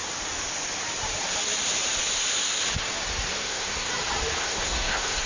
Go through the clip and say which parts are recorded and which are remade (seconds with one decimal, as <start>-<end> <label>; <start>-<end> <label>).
0.0-3.4 recorded; 3.4-3.9 remade; 3.9-4.4 recorded; 4.4-5.3 remade

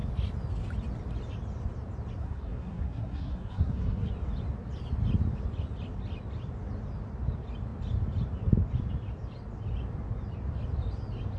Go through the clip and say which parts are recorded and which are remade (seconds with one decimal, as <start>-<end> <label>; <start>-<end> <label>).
0.0-2.2 recorded; 2.2-4.1 remade; 4.1-11.4 recorded